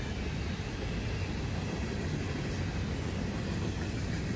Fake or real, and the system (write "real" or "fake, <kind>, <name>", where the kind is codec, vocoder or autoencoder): real